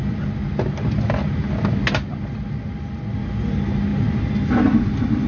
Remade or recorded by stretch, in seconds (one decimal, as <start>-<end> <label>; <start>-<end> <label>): 0.0-5.3 recorded